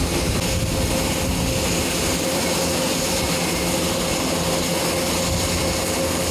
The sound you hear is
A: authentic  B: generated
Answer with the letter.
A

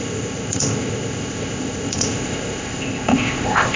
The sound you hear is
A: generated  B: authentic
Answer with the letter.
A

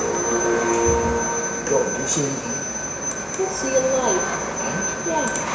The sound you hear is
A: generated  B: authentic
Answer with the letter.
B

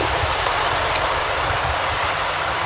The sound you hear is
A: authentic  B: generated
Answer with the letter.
B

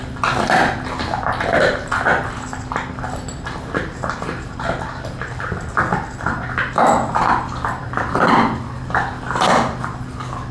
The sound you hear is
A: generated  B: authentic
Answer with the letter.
B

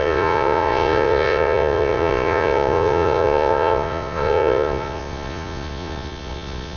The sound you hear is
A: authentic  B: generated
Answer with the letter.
B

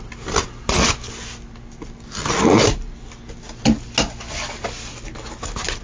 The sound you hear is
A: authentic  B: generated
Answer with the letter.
A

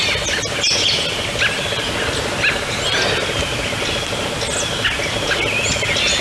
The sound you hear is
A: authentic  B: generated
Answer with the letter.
A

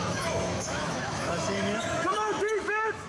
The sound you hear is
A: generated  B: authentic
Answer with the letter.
A